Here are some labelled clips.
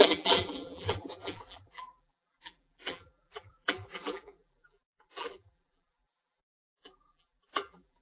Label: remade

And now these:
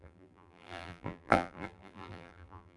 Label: remade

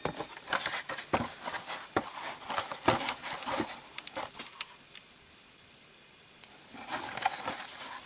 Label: recorded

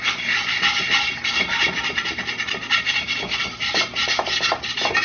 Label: remade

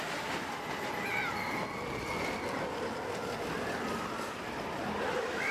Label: recorded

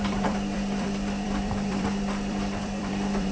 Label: remade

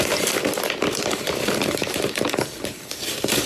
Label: remade